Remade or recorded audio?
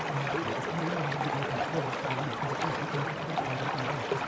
recorded